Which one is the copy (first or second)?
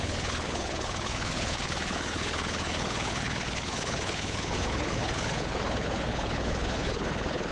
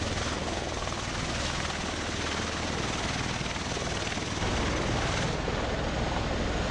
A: first